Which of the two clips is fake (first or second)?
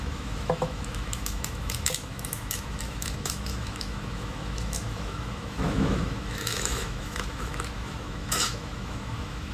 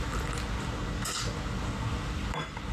first